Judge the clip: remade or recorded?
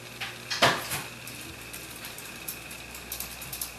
recorded